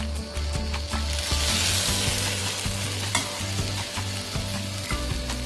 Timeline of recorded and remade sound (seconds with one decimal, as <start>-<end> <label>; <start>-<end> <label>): 0.0-5.5 recorded